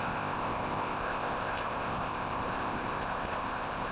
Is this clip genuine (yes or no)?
no